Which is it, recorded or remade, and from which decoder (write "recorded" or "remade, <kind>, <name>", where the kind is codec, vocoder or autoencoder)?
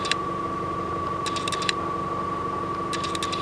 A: recorded